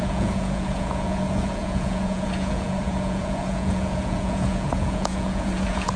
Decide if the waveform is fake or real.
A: fake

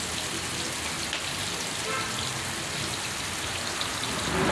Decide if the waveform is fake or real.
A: real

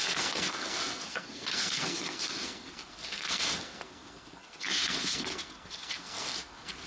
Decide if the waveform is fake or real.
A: fake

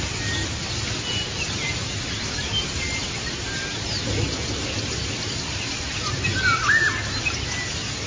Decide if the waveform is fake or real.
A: real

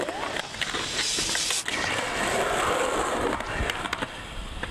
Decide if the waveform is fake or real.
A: real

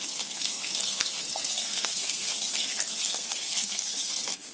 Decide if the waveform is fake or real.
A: fake